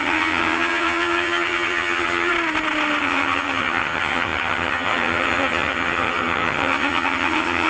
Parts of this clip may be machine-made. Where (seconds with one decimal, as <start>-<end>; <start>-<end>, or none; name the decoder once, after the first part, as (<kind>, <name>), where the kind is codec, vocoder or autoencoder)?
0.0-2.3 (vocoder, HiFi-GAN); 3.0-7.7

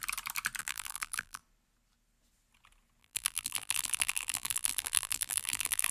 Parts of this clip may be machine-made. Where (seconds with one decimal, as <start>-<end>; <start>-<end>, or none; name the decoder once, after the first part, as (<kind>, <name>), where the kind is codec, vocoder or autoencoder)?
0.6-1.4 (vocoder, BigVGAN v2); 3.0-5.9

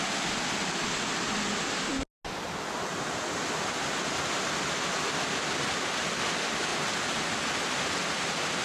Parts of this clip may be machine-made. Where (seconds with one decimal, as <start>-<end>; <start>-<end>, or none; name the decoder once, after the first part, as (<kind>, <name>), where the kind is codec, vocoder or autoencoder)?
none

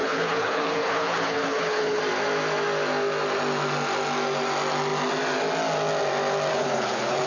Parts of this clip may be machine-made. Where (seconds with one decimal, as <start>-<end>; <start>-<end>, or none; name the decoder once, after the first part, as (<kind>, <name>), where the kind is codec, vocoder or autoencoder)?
0.0-2.0 (codec, HILCodec); 6.5-7.3